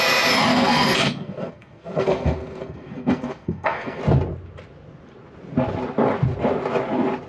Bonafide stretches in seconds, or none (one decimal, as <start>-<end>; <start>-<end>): 0.0-0.5; 4.0-7.3